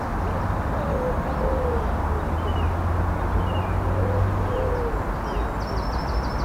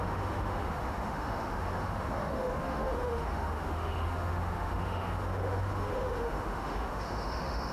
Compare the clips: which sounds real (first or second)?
first